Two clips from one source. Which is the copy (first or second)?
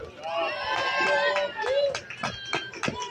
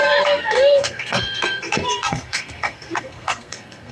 second